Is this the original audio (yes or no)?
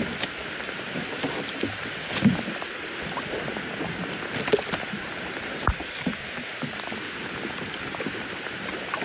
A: yes